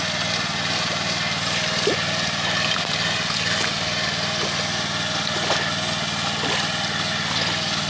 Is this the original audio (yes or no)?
yes